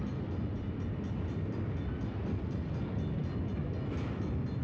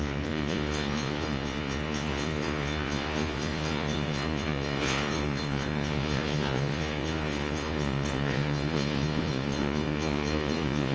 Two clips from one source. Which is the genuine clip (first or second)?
first